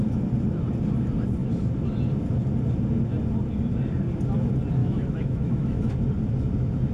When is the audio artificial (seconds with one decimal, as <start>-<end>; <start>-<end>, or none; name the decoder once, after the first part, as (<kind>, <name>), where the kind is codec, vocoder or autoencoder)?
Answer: 4.8-5.8 (autoencoder, DAC-VAE)